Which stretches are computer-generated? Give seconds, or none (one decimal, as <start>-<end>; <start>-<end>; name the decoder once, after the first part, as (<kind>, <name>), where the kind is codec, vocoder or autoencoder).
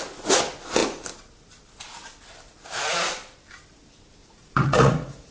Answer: 4.2-5.3 (vocoder, Vocos)